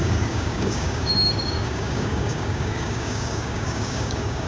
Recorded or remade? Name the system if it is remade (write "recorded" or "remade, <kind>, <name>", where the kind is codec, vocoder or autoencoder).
remade, codec, DAC